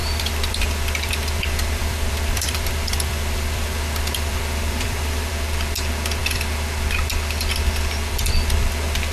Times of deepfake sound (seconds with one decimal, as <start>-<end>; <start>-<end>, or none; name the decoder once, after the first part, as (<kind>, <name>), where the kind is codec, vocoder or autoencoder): 0.0-5.3 (vocoder, BigVGAN v2)